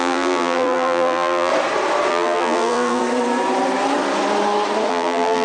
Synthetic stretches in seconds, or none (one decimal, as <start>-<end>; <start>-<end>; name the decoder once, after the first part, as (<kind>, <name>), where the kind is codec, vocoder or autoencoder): 0.0-1.5 (vocoder, BigVGAN v2); 2.1-3.0; 4.9-5.4